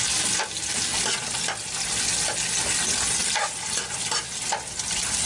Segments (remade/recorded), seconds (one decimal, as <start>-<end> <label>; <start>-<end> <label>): 0.0-5.3 recorded